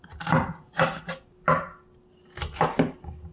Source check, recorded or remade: recorded